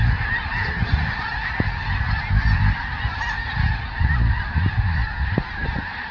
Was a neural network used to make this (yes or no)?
no